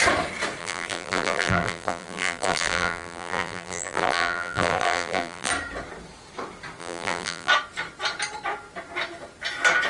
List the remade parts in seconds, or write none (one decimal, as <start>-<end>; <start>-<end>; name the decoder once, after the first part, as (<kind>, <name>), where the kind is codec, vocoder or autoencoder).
0.6-5.5 (vocoder, BigVGAN v2); 6.8-7.5